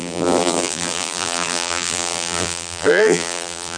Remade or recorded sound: remade